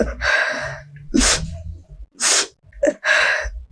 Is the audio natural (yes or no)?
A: yes